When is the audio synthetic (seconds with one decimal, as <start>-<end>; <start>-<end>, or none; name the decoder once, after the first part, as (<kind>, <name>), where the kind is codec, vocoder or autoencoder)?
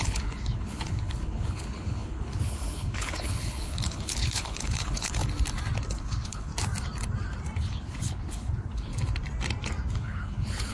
0.0-5.2 (codec, HILCodec); 6.0-6.5; 7.6-8.9; 9.9-10.7